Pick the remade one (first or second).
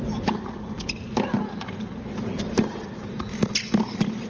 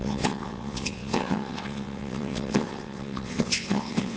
second